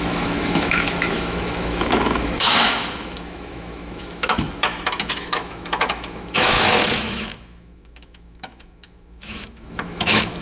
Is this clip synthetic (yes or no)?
yes